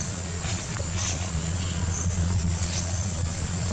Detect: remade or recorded remade